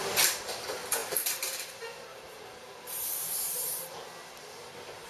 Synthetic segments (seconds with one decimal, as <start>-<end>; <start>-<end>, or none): 1.0-4.1